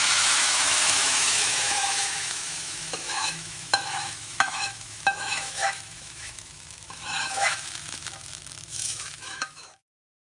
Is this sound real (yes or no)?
no